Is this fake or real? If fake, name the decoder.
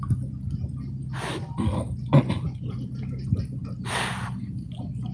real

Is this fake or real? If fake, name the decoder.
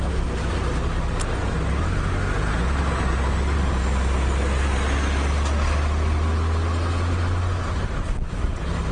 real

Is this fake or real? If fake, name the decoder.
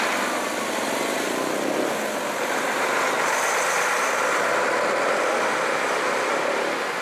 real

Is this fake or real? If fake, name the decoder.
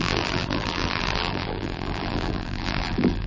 fake, vocoder, BigVGAN v2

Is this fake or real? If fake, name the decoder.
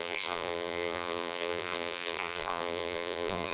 fake, vocoder, BigVGAN v2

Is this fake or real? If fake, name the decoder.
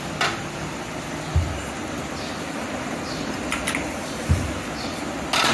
real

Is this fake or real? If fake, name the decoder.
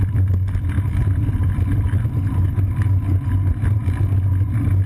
fake, vocoder, BigVGAN v2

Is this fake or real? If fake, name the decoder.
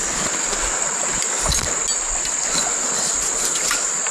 real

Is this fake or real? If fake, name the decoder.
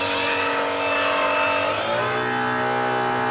real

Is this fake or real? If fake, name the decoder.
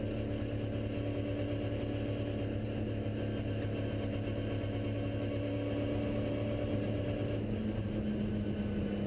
real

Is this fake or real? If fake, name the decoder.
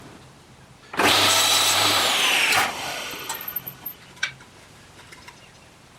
fake, vocoder, BigVGAN v2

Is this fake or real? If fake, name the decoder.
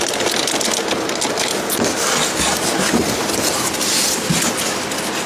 real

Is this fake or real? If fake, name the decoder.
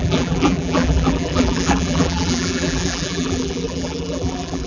fake, vocoder, BigVGAN v2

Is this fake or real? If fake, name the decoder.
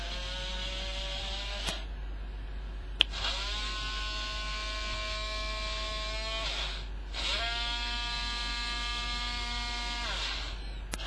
real